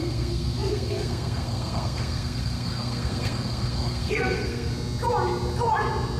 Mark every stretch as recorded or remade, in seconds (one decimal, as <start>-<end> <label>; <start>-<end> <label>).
0.0-4.7 remade; 4.7-6.2 recorded